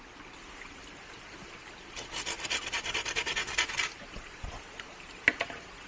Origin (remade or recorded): recorded